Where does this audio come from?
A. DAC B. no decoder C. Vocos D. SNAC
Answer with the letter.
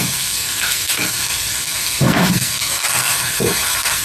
D